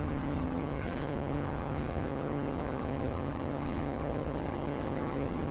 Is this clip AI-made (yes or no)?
yes